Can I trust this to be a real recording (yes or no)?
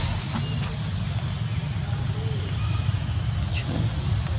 yes